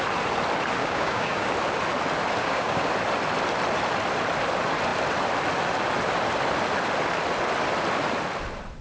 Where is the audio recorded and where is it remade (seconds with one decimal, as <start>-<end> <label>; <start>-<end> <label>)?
0.0-0.8 recorded; 0.8-1.5 remade; 1.5-2.4 recorded; 2.4-2.9 remade; 2.9-8.8 recorded